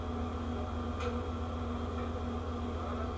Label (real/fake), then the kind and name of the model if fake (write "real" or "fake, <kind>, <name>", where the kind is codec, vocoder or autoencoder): real